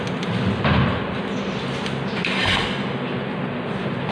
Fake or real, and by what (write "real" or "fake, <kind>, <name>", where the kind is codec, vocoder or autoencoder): real